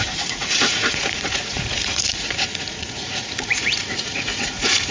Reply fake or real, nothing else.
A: fake